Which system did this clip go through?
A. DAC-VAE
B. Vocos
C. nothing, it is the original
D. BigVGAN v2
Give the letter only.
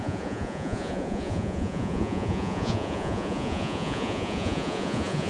B